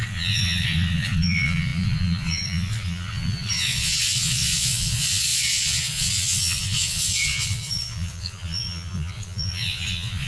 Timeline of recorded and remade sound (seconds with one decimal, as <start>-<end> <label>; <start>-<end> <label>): 0.0-10.3 remade